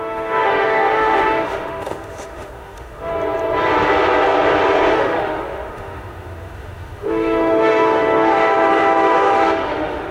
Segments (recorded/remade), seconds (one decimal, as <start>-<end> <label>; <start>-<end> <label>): 0.0-3.1 remade; 3.1-4.9 recorded; 4.9-10.1 remade